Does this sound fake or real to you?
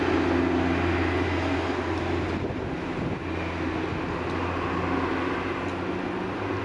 real